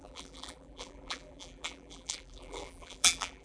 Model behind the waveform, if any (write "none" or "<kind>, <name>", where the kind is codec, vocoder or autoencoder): vocoder, BigVGAN v2